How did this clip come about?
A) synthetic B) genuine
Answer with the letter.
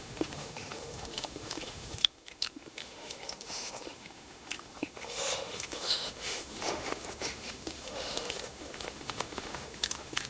A